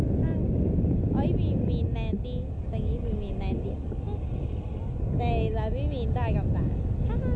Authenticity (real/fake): real